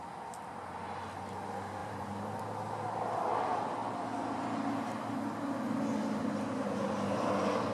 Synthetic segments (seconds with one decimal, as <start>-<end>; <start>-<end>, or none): 1.8-2.4